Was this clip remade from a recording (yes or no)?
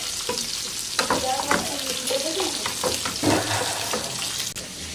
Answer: no